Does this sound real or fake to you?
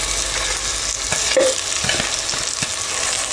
real